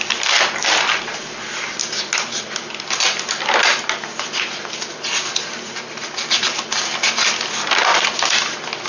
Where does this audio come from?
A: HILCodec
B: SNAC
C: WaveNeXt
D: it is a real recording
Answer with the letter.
D